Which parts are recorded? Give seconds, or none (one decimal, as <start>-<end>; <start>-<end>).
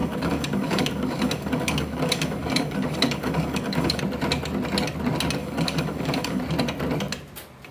4.0-5.4; 6.4-7.7